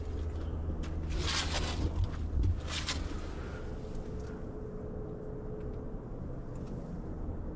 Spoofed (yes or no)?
no